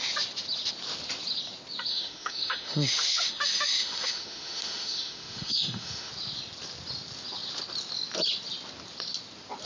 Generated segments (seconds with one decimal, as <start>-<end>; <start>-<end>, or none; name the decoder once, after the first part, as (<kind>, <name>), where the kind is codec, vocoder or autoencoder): 1.9-6.1 (autoencoder, DAC-VAE)